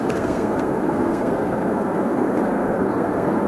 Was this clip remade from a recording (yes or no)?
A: yes